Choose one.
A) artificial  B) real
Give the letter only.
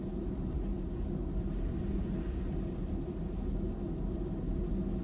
B